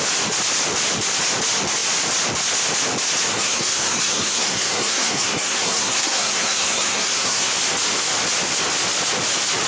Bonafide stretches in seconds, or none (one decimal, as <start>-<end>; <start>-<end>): 0.0-3.3; 7.5-9.7